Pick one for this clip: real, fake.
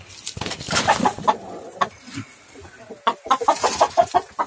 real